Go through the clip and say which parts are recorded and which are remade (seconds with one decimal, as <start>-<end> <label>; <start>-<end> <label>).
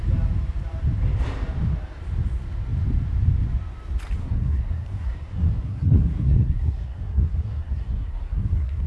0.0-4.2 recorded; 4.2-8.9 remade